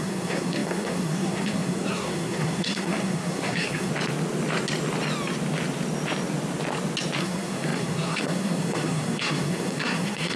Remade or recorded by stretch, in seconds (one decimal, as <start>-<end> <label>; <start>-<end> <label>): 0.0-3.9 remade; 3.9-7.2 recorded; 7.2-10.4 remade